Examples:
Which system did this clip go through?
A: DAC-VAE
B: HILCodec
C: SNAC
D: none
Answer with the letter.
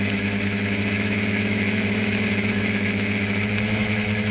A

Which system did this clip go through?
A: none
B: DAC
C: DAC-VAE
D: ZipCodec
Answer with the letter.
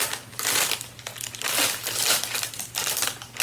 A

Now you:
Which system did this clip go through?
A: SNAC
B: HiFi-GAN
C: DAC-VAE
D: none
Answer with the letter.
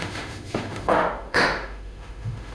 C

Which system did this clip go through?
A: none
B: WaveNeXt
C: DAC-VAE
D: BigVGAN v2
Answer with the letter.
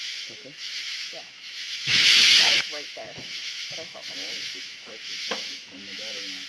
C